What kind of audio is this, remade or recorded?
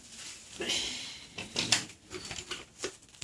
recorded